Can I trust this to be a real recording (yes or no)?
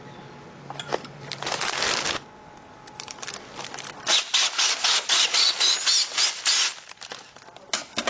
yes